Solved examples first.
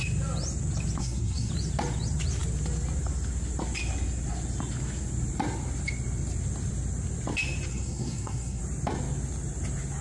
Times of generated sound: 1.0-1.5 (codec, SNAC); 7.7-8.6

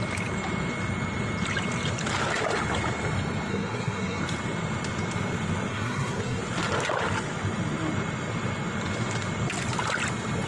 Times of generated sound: 3.5-4.2 (codec, SNAC); 5.7-6.4

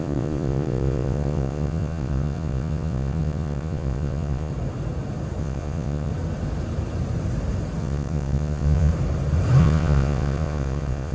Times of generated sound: 0.0-4.5 (vocoder, Vocos); 5.4-6.1; 7.8-8.9; 9.6-11.1